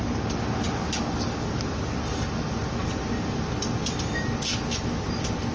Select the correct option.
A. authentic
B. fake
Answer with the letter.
A